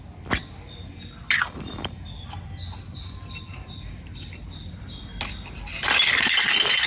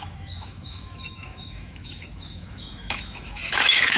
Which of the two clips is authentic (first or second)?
first